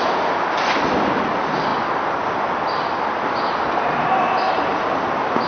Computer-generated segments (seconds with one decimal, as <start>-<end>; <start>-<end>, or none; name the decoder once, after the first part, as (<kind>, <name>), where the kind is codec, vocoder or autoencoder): none